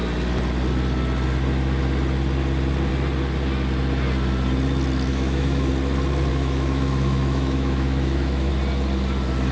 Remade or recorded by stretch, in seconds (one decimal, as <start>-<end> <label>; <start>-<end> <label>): 0.0-5.1 recorded; 5.1-5.7 remade; 5.7-6.3 recorded; 6.3-8.5 remade; 8.5-9.5 recorded